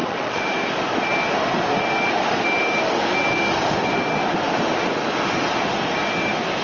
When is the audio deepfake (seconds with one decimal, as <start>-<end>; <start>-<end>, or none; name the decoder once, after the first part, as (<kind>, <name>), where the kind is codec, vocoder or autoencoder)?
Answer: 0.0-0.5 (vocoder, WaveNeXt)